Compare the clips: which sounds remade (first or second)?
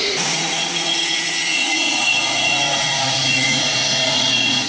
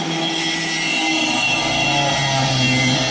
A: first